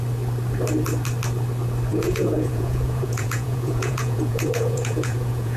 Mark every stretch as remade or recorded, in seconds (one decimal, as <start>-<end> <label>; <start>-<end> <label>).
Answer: 0.0-1.9 recorded; 1.9-5.6 remade